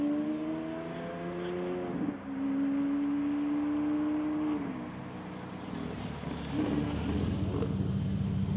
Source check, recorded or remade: recorded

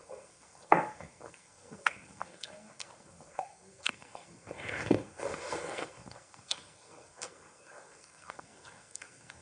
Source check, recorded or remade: remade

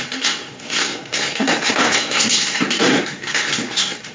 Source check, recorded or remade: remade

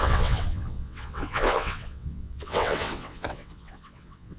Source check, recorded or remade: remade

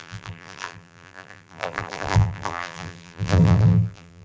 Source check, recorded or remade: remade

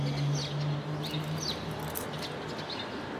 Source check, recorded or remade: recorded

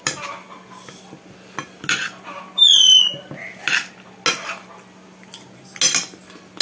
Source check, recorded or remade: recorded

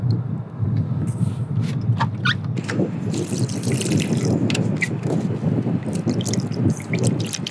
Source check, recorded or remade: recorded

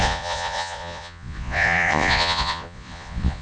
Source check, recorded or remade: remade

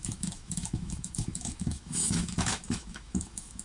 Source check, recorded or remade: remade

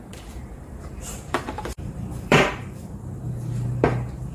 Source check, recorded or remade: remade